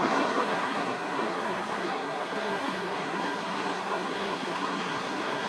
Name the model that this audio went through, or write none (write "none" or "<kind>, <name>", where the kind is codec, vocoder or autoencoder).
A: codec, SNAC